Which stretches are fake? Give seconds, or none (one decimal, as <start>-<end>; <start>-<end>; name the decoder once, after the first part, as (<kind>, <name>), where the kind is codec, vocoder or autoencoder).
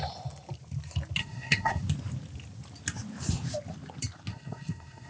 1.2-1.8 (codec, SNAC); 4.3-5.1